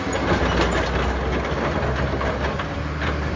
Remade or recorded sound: recorded